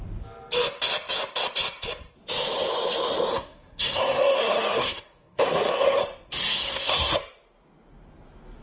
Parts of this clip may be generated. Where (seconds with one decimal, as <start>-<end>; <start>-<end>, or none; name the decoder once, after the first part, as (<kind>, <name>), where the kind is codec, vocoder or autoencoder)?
3.3-6.0 (codec, SNAC); 6.5-7.2